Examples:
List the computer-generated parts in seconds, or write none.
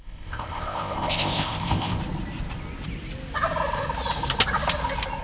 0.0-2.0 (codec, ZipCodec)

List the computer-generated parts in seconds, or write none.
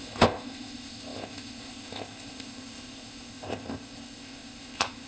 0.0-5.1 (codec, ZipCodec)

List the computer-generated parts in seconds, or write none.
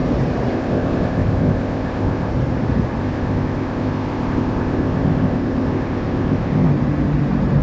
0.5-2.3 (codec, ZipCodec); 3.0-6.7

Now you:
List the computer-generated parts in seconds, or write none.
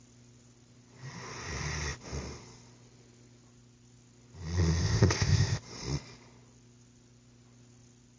4.8-5.6 (codec, ZipCodec)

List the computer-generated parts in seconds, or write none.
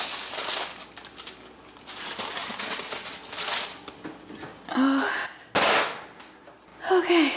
none